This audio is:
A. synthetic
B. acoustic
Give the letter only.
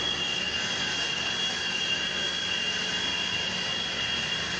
B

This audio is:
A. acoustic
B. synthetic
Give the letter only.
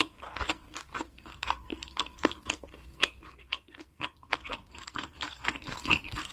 B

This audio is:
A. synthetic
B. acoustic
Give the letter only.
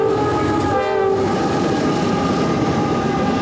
B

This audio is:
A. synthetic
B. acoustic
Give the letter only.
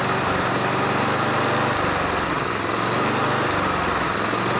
B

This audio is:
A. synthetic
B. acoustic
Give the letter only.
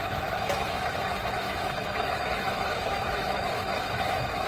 A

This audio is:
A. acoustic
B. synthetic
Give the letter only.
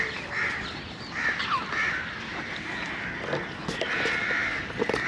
A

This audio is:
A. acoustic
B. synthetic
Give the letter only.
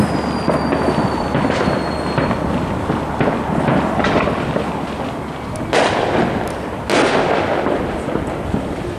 A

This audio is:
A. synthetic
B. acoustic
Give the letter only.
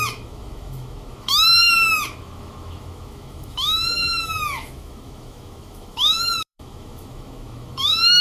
A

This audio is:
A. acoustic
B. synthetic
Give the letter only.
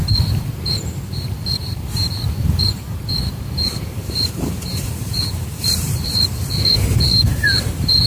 B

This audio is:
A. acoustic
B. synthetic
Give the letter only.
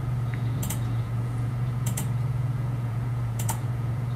B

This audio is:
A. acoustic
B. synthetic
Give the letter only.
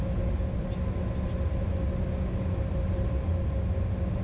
A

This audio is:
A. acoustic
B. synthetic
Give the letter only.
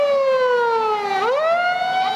A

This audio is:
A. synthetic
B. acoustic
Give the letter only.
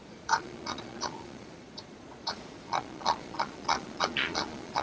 A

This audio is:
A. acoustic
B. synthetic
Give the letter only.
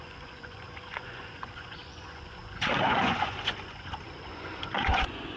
B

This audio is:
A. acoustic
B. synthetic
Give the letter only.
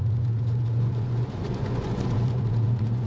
B